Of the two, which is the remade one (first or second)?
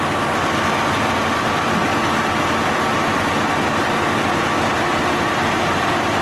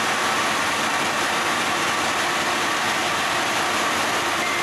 second